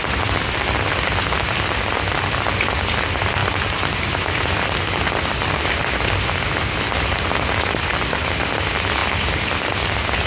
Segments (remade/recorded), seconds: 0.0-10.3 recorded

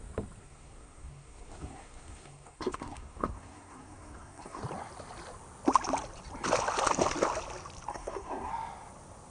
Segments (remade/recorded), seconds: 0.0-0.4 recorded; 0.4-4.6 remade; 4.6-7.9 recorded; 7.9-8.5 remade; 8.5-9.3 recorded

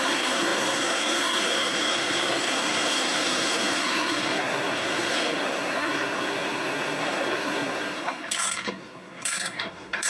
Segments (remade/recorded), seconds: 0.0-10.1 remade

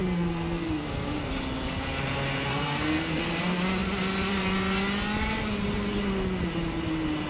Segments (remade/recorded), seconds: 0.0-1.3 remade; 1.3-2.5 recorded; 2.5-3.2 remade; 3.2-7.3 recorded

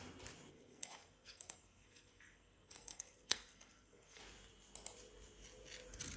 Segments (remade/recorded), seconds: 0.0-0.5 recorded; 0.5-4.2 remade; 4.2-6.2 recorded

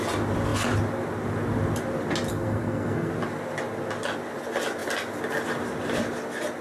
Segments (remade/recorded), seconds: 0.0-2.3 recorded; 2.3-3.1 remade; 3.1-6.6 recorded

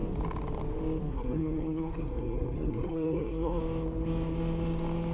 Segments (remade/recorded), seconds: 0.0-1.1 recorded; 1.1-3.6 remade; 3.6-5.1 recorded

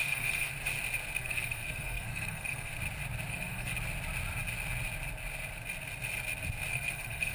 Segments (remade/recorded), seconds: 0.0-0.5 remade; 0.5-1.2 recorded; 1.2-2.7 remade; 2.7-3.3 recorded; 3.3-3.7 remade; 3.7-6.7 recorded; 6.7-7.3 remade